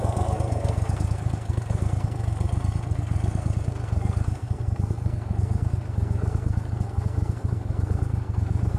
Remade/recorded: remade